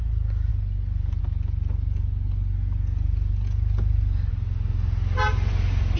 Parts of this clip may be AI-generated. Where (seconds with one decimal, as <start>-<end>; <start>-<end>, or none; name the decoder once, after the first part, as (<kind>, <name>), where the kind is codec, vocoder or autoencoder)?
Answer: none